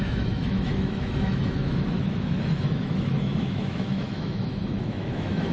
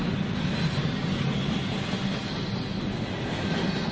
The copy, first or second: first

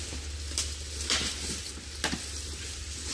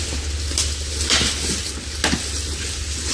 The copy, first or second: first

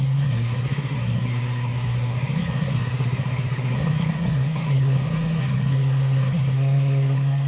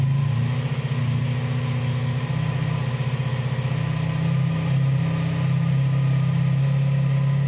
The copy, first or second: first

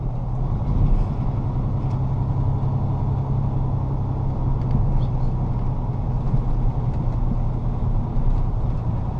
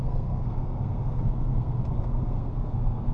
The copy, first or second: second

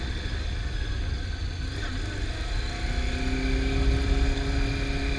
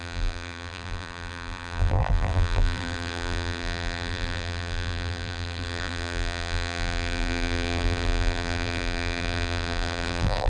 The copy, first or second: second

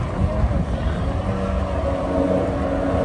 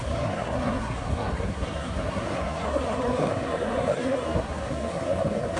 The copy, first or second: second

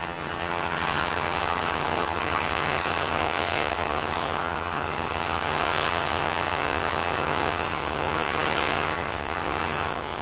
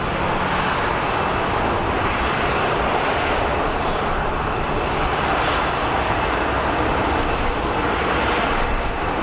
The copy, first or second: first